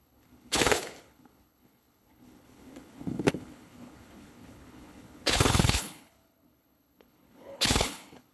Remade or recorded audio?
remade